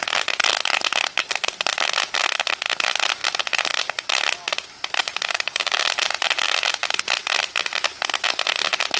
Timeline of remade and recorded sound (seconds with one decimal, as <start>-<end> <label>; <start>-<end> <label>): 0.0-5.3 recorded; 5.3-5.9 remade; 5.9-9.0 recorded